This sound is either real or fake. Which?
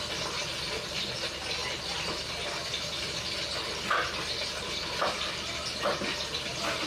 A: real